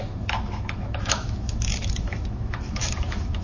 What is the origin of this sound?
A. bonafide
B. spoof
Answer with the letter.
B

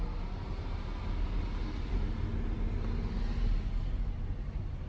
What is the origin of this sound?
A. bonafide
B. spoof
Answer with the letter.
A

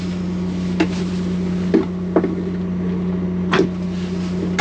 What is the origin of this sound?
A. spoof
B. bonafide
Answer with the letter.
B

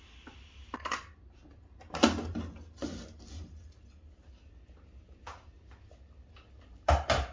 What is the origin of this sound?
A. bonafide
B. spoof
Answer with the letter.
A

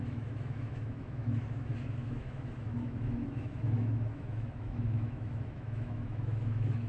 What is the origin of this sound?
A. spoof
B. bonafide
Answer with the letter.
A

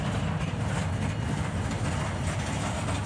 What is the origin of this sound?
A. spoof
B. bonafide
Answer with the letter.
B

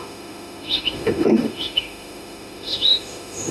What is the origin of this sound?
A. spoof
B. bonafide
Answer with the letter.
A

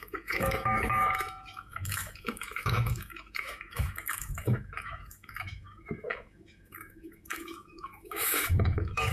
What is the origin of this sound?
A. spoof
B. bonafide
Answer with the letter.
A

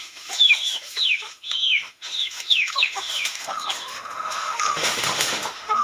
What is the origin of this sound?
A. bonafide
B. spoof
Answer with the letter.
B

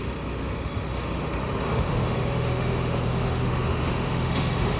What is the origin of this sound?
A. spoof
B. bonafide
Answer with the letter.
A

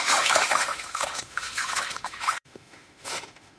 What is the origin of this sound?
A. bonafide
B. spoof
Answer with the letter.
B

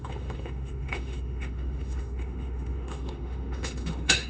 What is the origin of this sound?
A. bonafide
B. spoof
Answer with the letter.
B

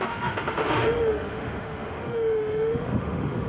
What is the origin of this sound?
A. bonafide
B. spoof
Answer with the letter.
B